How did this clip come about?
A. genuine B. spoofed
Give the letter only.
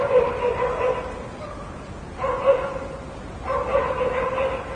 A